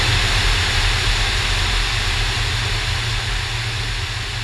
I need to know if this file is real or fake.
real